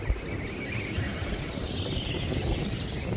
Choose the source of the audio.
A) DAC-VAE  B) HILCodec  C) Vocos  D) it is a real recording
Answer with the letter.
D